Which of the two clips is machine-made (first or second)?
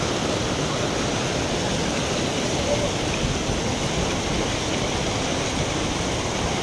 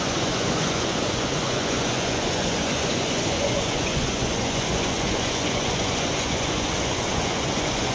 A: second